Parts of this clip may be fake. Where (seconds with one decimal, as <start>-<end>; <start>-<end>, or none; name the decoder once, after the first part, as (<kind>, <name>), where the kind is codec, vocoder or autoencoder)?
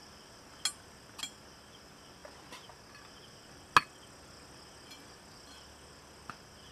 none